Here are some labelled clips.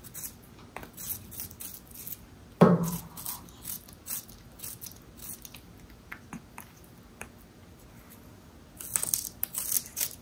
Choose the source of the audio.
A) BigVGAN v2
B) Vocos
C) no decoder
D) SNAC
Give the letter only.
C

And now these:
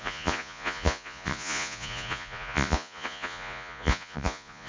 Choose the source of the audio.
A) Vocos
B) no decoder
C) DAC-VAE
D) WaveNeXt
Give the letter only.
A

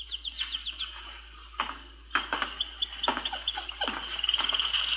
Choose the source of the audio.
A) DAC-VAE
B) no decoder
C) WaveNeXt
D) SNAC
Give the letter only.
B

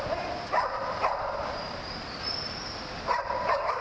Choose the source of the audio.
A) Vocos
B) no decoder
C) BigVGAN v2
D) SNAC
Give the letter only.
C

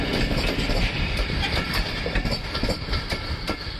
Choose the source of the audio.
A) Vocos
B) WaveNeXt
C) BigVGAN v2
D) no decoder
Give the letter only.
C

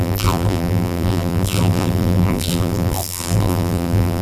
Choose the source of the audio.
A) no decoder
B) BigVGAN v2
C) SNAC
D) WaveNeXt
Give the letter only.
B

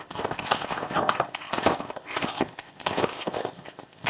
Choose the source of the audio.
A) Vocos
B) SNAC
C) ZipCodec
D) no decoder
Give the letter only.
C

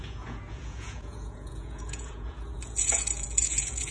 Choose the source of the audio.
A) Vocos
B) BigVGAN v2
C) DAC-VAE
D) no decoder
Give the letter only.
A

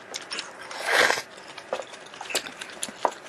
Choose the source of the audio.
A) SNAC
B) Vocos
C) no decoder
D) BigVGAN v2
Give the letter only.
C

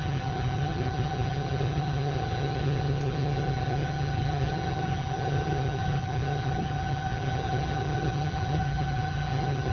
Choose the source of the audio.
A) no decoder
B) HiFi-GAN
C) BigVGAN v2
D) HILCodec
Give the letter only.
B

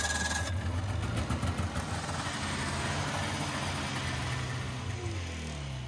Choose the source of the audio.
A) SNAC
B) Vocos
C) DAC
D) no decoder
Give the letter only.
D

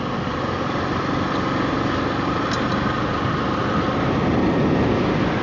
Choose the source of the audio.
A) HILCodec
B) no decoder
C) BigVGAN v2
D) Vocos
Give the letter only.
B